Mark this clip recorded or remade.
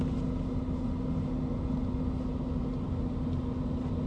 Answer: recorded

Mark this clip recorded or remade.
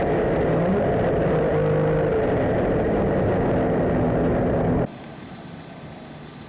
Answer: recorded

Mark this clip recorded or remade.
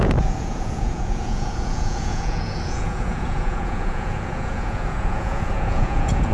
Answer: remade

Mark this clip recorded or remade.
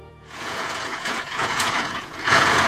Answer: remade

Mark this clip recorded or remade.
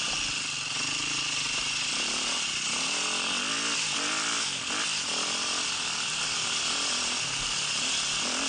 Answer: recorded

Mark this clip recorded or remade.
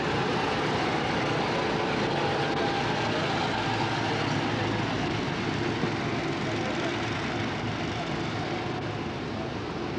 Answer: recorded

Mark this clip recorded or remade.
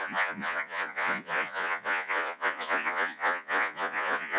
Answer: remade